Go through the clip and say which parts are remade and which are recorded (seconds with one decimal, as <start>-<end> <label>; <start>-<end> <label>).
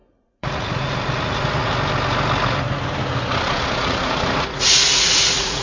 0.0-1.7 remade; 1.7-3.6 recorded; 3.6-5.6 remade